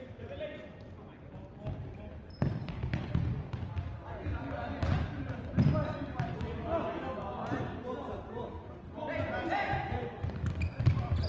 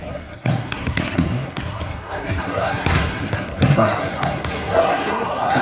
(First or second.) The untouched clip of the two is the first